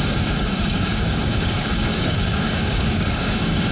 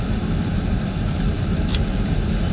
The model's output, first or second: first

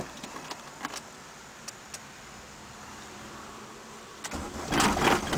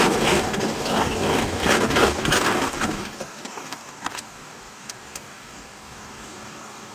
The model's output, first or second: second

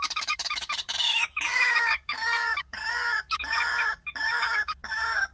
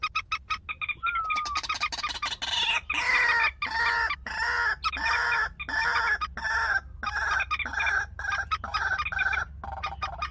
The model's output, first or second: first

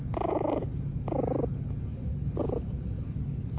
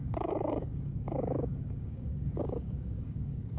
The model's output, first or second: second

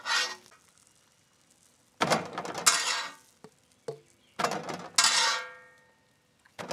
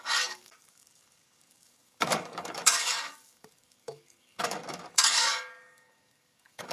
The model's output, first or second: second